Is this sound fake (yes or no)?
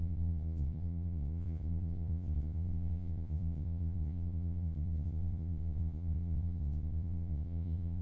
yes